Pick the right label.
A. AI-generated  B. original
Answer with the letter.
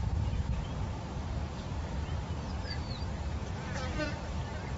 A